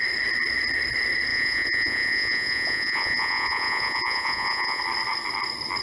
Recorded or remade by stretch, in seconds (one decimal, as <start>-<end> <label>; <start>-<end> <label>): 0.0-1.3 recorded; 1.3-4.8 remade; 4.8-5.8 recorded

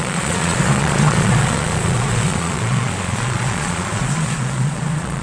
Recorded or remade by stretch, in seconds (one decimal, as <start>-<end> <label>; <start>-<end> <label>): 0.0-5.2 remade

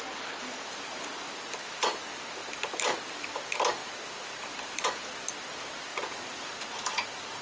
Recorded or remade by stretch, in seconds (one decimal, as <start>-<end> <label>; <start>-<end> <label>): 0.0-5.9 recorded; 5.9-6.5 remade; 6.5-7.4 recorded

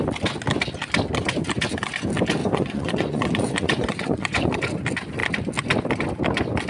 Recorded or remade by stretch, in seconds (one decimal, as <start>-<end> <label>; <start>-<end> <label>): 0.0-2.4 recorded; 2.4-4.5 remade; 4.5-6.7 recorded

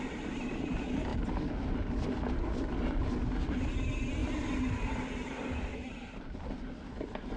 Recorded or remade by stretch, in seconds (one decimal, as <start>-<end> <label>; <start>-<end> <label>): 0.0-7.4 recorded

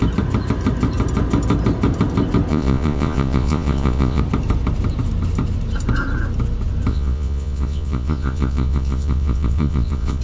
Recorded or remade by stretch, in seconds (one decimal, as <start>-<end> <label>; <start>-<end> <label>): 0.0-2.5 recorded; 2.5-4.2 remade; 4.2-6.9 recorded; 6.9-10.2 remade

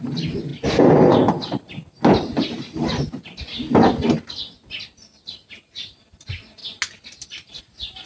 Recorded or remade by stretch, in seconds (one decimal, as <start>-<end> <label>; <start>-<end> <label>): 0.0-8.1 recorded

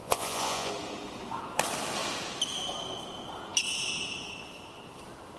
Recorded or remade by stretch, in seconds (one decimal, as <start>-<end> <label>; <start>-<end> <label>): 0.0-0.7 remade; 0.7-5.4 recorded